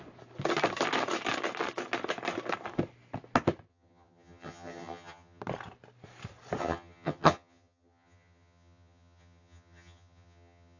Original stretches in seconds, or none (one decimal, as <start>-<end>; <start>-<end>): 0.0-3.7; 5.4-6.6